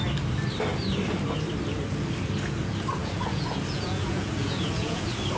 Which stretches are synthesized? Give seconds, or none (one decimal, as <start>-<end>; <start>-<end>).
3.0-5.0